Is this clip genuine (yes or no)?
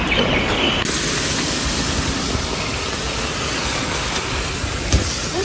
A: yes